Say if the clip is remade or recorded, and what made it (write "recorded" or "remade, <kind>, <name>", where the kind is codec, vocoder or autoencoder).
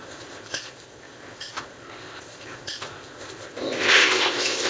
remade, codec, ZipCodec